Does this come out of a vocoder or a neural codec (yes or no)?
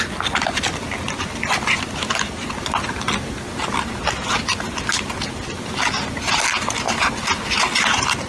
no